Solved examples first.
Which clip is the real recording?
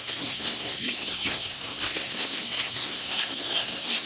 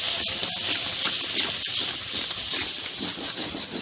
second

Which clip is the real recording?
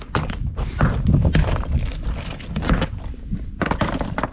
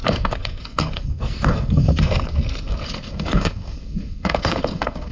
first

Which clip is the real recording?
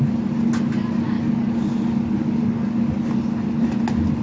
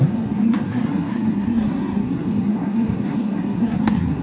first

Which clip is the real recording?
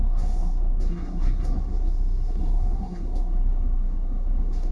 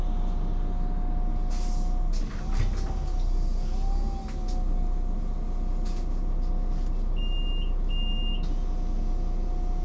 second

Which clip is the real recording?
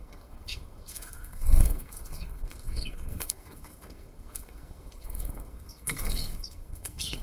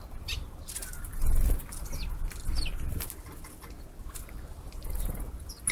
second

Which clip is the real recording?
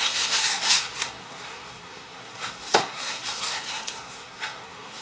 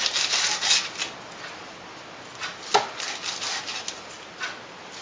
second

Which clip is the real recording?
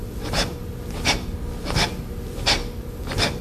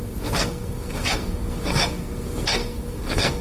first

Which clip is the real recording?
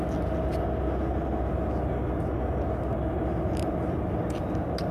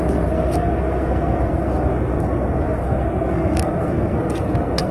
first